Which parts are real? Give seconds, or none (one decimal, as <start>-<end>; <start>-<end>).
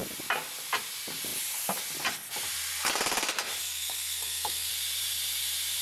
0.0-3.6; 4.7-5.8